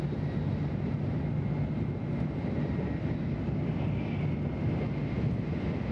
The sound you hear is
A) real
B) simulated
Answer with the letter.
A